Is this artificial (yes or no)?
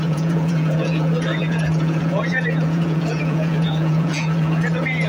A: yes